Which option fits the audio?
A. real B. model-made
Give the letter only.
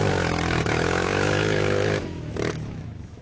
B